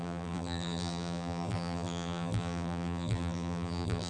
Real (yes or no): no